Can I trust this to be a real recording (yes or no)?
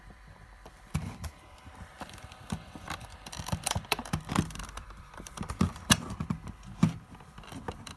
no